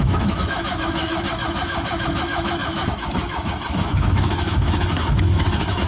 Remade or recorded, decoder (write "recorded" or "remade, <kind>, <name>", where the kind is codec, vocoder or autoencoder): remade, autoencoder, DAC-VAE